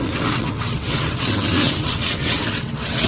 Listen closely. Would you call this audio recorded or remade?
remade